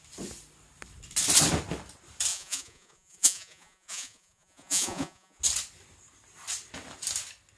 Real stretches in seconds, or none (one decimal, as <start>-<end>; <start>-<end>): 0.0-2.3; 5.4-7.6